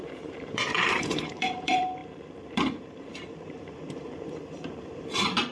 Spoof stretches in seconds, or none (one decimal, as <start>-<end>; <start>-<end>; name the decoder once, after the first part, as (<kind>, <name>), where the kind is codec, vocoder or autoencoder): 0.0-5.5 (vocoder, BigVGAN v2)